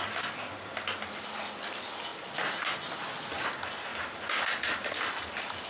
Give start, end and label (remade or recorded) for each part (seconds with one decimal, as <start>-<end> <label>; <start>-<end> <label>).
0.0-3.9 recorded; 3.9-5.1 remade; 5.1-5.7 recorded